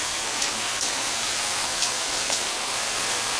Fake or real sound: fake